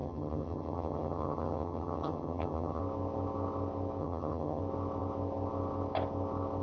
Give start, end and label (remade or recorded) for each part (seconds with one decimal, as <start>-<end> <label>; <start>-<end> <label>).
0.0-2.8 remade; 2.8-4.0 recorded; 4.0-4.6 remade; 4.6-6.6 recorded

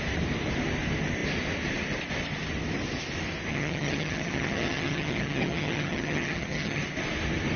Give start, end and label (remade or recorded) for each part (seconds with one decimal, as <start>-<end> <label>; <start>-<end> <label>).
0.0-3.5 recorded; 3.5-6.8 remade; 6.8-7.6 recorded

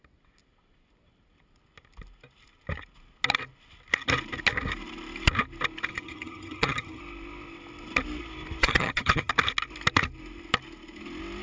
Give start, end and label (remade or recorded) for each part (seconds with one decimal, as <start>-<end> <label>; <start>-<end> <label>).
0.0-5.9 recorded; 5.9-7.0 remade; 7.0-8.6 recorded; 8.6-9.3 remade; 9.3-11.4 recorded

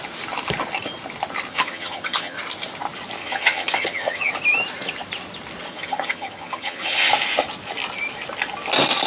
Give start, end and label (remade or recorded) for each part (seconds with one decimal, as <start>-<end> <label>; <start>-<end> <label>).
0.0-1.5 recorded; 1.5-2.4 remade; 2.4-3.2 recorded; 3.2-4.3 remade; 4.3-5.7 recorded; 5.7-7.1 remade; 7.1-9.1 recorded

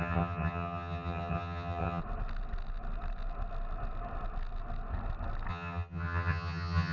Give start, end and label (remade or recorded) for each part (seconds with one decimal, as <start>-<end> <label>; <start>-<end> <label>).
0.0-2.0 remade; 2.0-5.5 recorded; 5.5-6.9 remade